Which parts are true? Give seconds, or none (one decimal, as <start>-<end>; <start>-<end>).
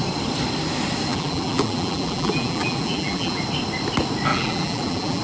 0.0-1.1; 3.4-4.3